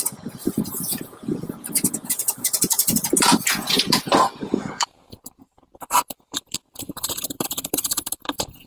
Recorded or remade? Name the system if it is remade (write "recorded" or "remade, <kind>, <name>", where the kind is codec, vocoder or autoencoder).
remade, vocoder, Vocos